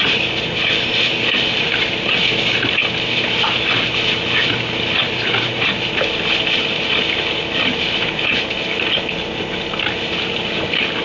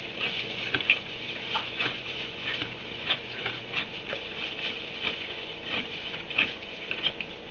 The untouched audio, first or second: first